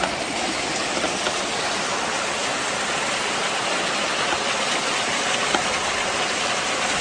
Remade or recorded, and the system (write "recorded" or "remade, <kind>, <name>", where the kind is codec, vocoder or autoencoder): recorded